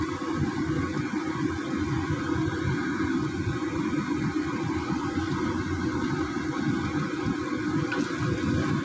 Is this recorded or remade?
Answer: recorded